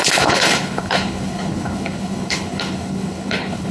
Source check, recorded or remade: remade